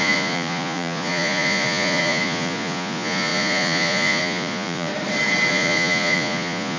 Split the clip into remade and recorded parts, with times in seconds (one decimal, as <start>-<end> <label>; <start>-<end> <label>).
0.0-4.9 remade; 4.9-5.5 recorded; 5.5-6.8 remade